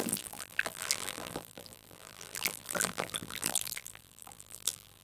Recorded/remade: remade